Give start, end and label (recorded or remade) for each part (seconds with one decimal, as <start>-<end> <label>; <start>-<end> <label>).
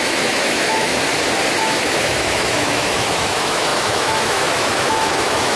0.0-0.9 remade; 0.9-1.6 recorded; 1.6-5.6 remade